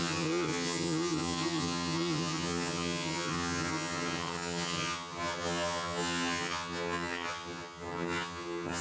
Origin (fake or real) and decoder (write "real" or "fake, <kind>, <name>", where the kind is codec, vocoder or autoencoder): fake, vocoder, HiFi-GAN